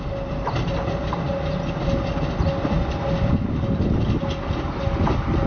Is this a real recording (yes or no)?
yes